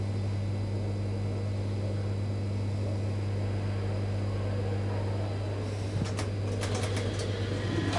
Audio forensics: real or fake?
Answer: real